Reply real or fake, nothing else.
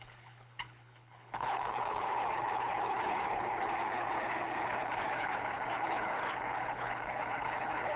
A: fake